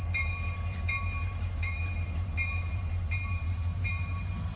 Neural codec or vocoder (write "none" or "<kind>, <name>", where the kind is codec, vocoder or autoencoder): vocoder, BigVGAN v2